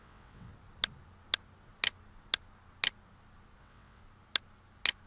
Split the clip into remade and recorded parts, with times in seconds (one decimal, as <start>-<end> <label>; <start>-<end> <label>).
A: 0.0-0.5 remade; 0.5-3.6 recorded; 3.6-4.0 remade; 4.0-5.1 recorded